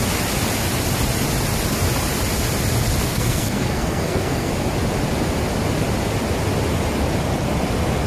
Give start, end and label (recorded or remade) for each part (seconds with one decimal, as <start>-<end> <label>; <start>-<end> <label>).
0.0-3.1 recorded; 3.1-4.5 remade; 4.5-8.1 recorded